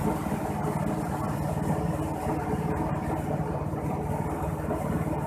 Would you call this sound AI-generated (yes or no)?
no